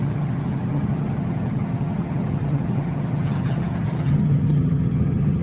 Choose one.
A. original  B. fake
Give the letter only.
B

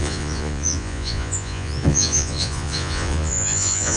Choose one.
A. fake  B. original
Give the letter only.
A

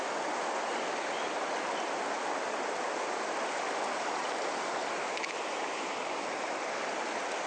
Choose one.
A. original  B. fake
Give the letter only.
A